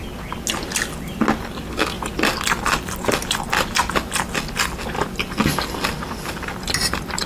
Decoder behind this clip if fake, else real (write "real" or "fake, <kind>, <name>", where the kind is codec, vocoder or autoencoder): real